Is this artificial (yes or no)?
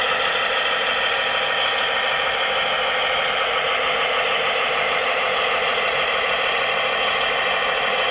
no